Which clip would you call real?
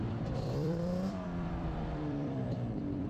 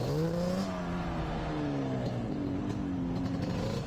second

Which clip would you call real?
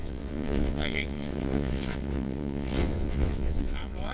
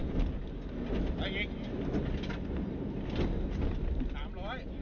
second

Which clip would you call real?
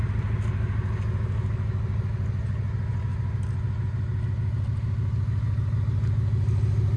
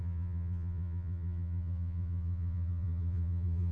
first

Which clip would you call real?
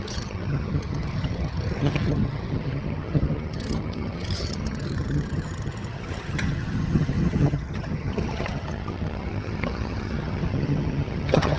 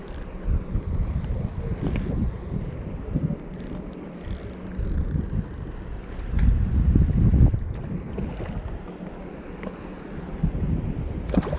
second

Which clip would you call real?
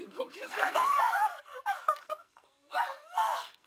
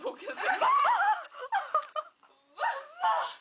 second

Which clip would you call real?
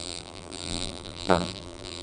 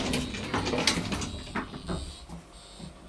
second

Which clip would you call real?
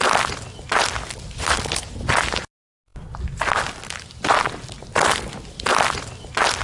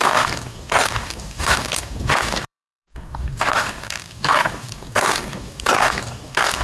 first